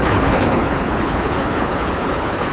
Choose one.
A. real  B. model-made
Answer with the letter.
B